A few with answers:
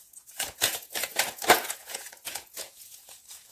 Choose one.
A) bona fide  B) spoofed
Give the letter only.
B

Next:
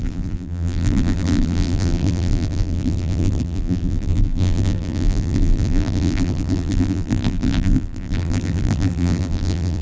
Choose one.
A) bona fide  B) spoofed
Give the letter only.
B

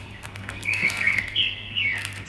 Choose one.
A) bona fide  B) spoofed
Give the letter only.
B